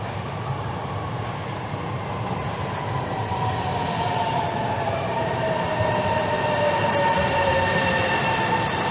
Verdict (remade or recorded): remade